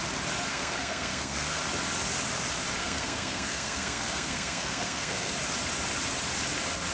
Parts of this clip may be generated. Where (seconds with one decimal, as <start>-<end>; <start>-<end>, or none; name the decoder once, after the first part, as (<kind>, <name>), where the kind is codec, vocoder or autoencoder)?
0.5-1.6 (codec, SNAC); 2.8-5.3